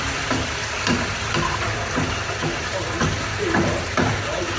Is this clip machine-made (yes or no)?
no